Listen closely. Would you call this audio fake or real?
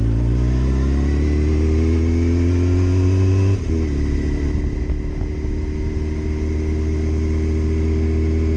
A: real